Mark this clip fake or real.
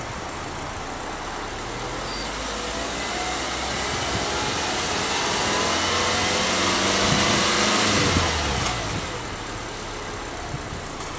real